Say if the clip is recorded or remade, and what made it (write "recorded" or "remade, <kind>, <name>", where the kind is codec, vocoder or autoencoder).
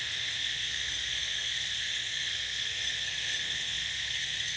remade, codec, SNAC